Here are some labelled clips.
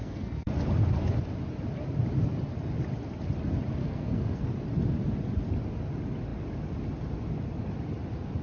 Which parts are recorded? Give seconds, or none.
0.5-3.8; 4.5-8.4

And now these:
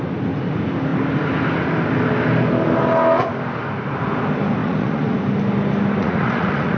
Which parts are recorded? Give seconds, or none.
0.0-4.6; 5.2-6.0